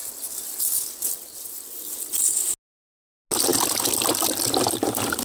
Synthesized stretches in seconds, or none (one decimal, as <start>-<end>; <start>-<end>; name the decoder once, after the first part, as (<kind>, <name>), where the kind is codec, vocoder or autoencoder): none